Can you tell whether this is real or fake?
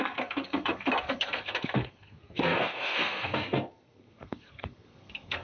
fake